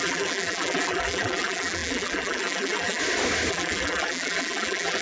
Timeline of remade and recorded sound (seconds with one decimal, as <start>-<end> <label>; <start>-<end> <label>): 0.0-3.0 remade; 3.0-3.5 recorded; 3.5-5.0 remade